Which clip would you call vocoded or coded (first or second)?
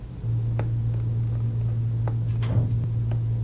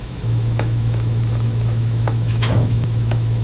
second